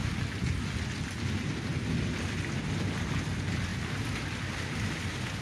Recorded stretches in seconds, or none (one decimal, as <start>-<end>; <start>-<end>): 0.0-5.4